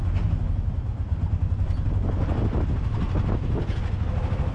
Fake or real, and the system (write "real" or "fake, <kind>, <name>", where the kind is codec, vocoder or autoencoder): real